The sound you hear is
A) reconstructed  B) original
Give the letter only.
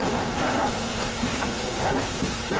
A